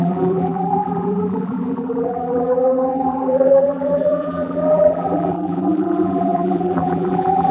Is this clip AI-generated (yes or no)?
yes